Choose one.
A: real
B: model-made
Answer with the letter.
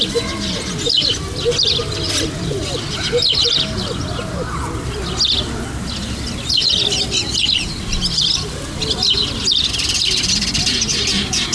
A